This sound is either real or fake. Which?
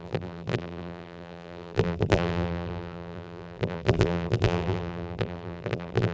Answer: fake